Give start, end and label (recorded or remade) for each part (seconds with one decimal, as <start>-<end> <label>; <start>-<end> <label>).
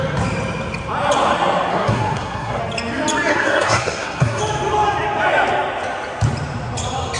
0.0-1.7 recorded; 1.7-2.6 remade; 2.6-3.3 recorded; 3.3-4.4 remade; 4.4-7.2 recorded